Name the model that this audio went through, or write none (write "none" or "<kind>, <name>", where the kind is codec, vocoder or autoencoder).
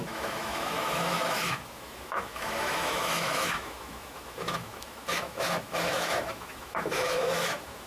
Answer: autoencoder, DAC-VAE